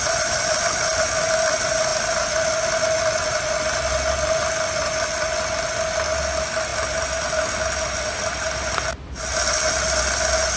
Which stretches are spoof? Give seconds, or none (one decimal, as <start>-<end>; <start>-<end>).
none